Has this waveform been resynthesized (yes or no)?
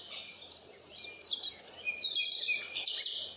yes